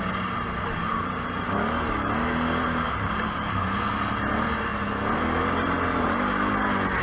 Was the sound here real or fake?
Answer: real